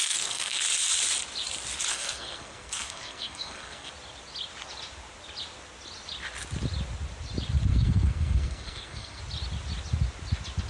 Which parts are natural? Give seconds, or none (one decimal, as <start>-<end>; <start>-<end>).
0.6-1.9; 3.9-7.7; 9.2-10.7

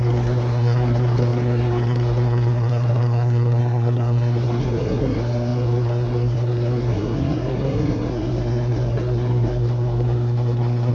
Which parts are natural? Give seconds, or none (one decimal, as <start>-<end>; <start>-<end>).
none